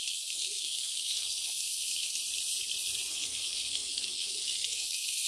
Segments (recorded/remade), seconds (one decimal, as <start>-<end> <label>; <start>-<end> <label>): 0.0-2.2 remade; 2.2-3.1 recorded; 3.1-5.3 remade